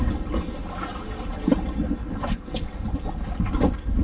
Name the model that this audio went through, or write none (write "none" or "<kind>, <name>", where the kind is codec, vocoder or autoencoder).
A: none